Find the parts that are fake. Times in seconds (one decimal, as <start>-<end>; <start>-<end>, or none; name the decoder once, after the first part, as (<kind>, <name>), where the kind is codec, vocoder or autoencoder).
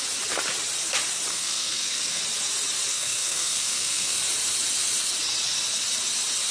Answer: 1.3-2.2 (codec, SNAC); 2.9-4.2